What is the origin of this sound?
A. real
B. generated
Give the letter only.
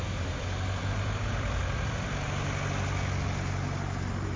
A